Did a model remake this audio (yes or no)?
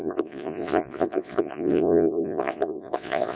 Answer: yes